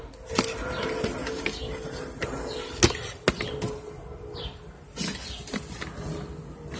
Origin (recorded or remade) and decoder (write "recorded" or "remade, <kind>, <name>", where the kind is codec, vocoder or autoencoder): recorded